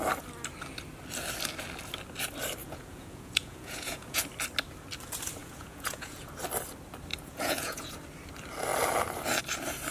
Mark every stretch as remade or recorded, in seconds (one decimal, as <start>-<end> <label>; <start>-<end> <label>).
0.0-2.6 recorded; 2.6-4.2 remade; 4.2-5.4 recorded; 5.4-6.3 remade; 6.3-7.1 recorded; 7.1-7.9 remade; 7.9-9.9 recorded